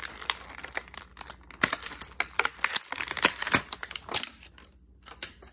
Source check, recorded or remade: remade